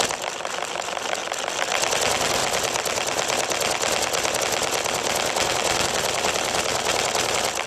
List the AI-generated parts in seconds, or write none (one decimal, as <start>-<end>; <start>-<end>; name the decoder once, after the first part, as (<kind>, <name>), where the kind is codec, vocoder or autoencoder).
none